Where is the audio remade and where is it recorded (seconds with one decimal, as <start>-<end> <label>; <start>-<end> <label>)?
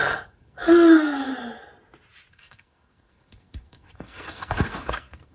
0.0-1.3 remade; 1.3-2.3 recorded; 2.3-5.3 remade